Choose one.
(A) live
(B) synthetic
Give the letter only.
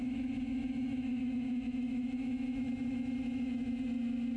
B